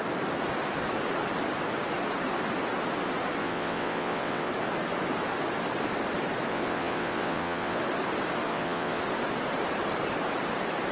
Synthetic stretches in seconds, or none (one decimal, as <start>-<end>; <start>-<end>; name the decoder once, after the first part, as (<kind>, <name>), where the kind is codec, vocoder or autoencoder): 3.4-4.5 (vocoder, WaveNeXt); 6.5-7.8; 8.5-9.0